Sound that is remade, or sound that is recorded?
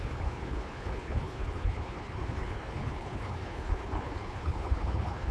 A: remade